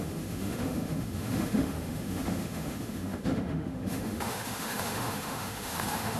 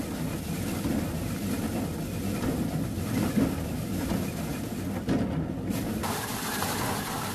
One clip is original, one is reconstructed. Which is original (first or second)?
second